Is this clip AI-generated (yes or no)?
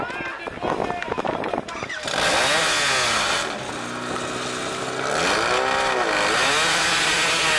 no